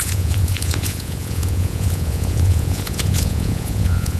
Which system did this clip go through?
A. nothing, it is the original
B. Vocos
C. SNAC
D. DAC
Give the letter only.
B